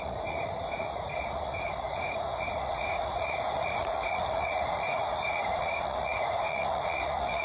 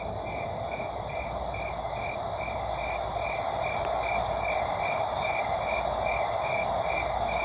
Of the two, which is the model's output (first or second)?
first